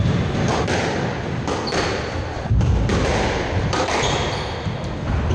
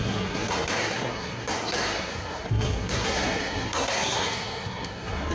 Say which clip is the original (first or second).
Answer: first